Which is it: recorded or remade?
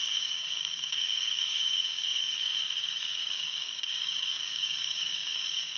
remade